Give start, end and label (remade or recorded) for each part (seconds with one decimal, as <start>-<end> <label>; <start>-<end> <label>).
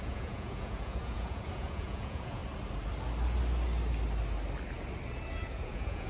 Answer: 0.0-2.4 remade; 2.4-5.3 recorded; 5.3-6.1 remade